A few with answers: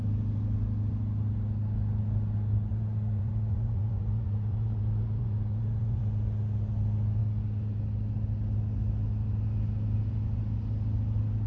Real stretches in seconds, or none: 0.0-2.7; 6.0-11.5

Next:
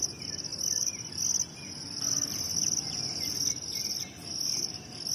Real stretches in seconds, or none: 0.0-5.1

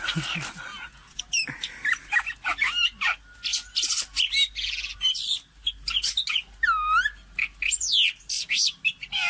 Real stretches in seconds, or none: 0.0-0.7; 1.2-9.3

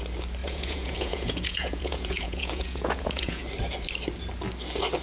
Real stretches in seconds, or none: 0.0-0.4; 3.4-5.0

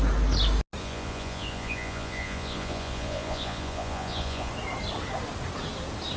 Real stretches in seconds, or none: 0.0-0.8; 4.5-6.2

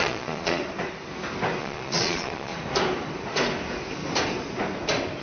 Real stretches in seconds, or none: 0.6-1.6; 2.5-5.2

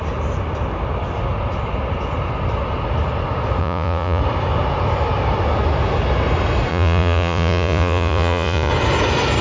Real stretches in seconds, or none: 0.0-3.6; 4.2-6.7; 8.7-9.4